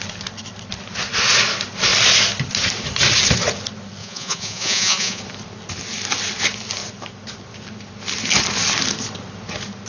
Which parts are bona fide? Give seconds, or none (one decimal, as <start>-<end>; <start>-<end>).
0.0-4.0; 5.2-9.9